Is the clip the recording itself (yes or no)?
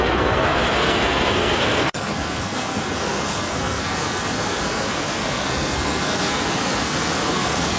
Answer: no